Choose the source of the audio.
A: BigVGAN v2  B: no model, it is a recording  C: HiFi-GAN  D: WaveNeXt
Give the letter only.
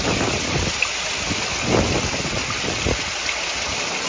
B